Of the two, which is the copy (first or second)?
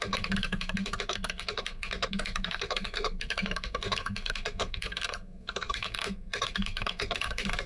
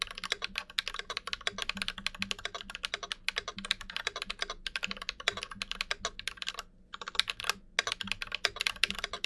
first